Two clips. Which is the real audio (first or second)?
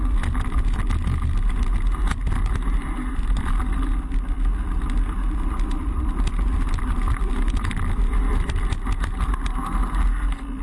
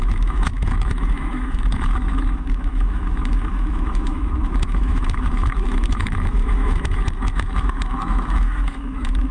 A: first